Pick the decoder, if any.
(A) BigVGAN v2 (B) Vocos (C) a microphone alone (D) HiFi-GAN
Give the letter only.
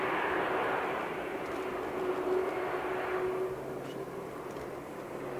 C